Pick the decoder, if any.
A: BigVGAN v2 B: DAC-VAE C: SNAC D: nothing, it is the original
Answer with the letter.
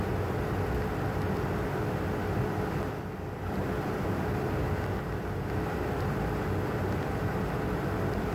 D